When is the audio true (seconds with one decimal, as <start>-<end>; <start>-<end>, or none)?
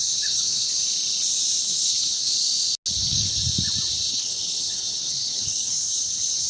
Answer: 0.8-1.6; 2.3-3.0; 3.4-4.1